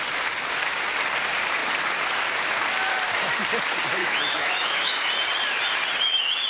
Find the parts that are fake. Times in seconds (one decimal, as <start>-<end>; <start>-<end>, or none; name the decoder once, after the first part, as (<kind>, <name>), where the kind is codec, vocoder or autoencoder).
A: 4.0-5.1 (autoencoder, DAC-VAE)